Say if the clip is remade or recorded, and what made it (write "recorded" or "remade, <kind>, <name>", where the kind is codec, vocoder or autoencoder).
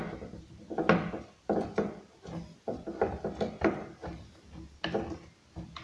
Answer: recorded